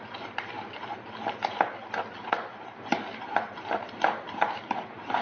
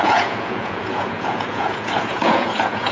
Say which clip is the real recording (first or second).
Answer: first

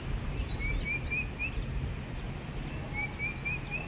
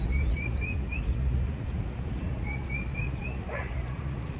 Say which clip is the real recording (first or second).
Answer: first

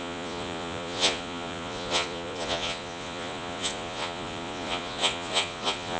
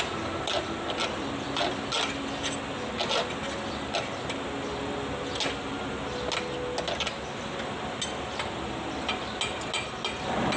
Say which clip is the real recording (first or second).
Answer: second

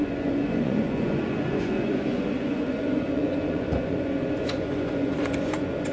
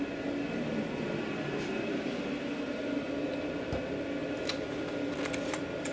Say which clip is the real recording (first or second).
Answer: second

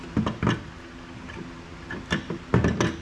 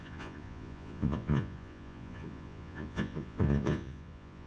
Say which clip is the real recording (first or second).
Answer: first